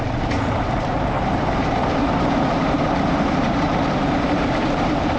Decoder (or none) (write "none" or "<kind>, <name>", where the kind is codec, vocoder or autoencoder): vocoder, BigVGAN v2